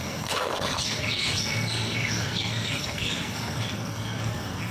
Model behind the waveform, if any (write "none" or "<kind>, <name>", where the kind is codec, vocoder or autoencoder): codec, SNAC